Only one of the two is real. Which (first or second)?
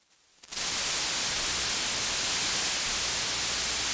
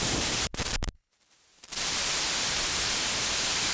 first